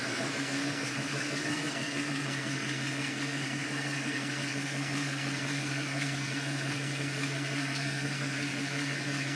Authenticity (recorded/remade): remade